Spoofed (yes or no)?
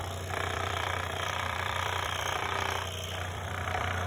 yes